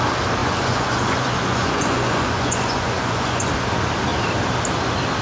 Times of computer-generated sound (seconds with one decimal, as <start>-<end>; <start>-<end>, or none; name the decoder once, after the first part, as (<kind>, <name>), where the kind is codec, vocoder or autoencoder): 0.4-3.5 (vocoder, Vocos)